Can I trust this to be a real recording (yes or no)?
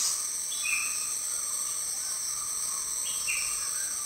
yes